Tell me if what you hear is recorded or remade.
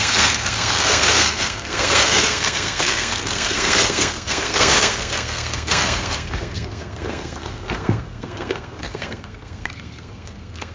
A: remade